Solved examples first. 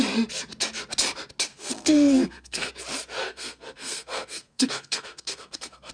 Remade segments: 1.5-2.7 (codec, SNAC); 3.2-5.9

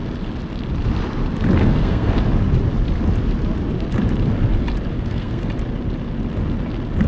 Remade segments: 1.6-2.1 (codec, SNAC); 4.9-5.5

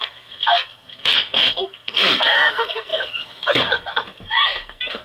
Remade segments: 0.0-5.0 (codec, SNAC)

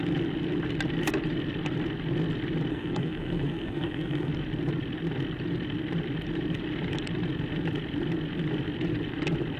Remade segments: 2.7-4.3 (codec, SNAC)